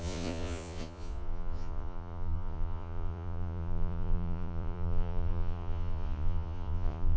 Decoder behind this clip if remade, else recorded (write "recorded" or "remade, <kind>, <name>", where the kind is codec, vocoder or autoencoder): remade, vocoder, Vocos